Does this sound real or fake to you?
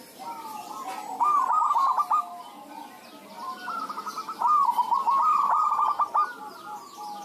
real